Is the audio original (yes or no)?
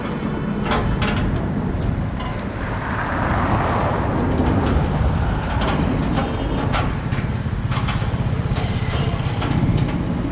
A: yes